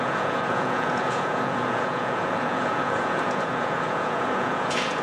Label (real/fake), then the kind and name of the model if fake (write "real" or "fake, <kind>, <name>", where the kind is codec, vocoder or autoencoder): fake, vocoder, Vocos